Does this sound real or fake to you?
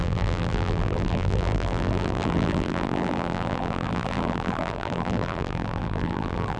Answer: fake